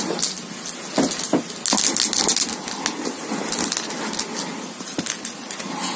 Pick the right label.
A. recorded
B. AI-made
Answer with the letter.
A